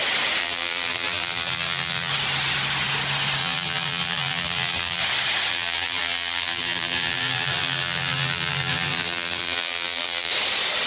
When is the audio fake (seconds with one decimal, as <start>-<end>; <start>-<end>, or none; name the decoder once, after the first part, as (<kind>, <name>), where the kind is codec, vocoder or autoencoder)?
0.4-2.1 (vocoder, BigVGAN v2); 3.4-5.0; 5.5-10.3